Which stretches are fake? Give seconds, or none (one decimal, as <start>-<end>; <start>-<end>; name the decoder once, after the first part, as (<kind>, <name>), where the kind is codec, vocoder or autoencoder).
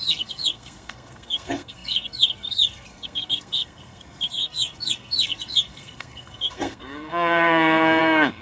0.0-8.4 (codec, SNAC)